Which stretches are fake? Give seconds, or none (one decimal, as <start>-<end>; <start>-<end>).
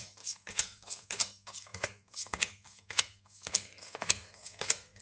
0.0-5.0